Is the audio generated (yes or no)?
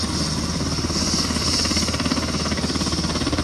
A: no